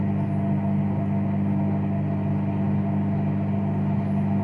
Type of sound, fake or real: real